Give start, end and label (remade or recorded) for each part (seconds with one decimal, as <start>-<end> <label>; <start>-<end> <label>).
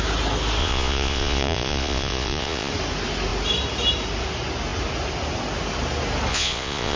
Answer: 0.0-0.6 recorded; 0.6-2.7 remade; 2.7-6.3 recorded; 6.3-7.0 remade